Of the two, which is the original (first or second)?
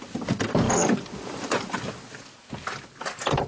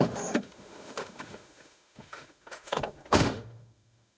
first